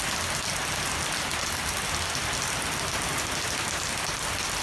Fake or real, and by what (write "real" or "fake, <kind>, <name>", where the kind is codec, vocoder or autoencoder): real